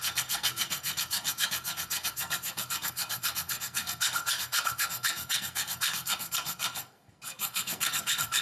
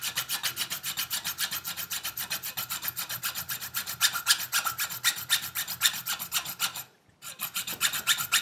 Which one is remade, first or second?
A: first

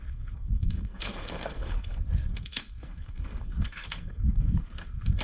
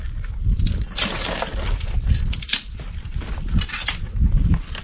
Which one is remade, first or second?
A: first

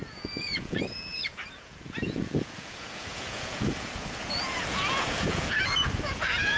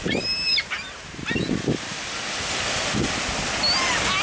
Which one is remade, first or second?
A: first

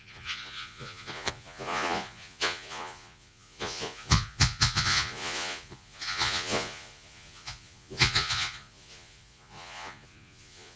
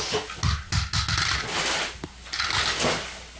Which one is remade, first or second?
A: first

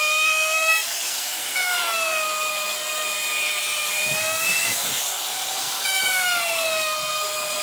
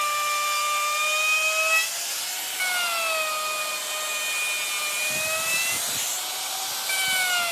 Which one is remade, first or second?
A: first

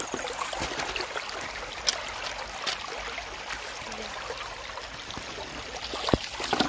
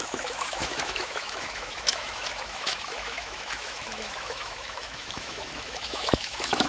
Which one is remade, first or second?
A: second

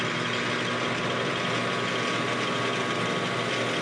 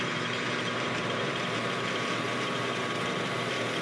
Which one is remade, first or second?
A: second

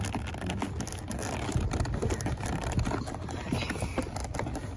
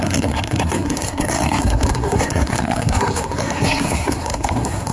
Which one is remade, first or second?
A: second